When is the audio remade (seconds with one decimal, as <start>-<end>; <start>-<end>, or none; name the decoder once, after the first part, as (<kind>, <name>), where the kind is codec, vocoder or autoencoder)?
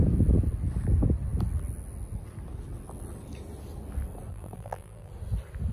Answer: 4.3-5.1 (vocoder, BigVGAN v2)